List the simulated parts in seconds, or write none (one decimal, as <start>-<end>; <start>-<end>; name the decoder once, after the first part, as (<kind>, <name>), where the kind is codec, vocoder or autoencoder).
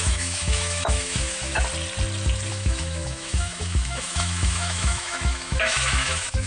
0.0-1.5 (autoencoder, DAC-VAE); 2.5-6.5